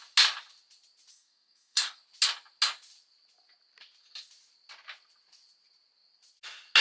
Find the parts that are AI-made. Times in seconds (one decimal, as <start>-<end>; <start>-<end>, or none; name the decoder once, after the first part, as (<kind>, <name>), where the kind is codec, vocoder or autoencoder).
1.1-2.0 (codec, DAC)